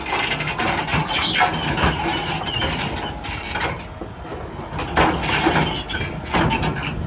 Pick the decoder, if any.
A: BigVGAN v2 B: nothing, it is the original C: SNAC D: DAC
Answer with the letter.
B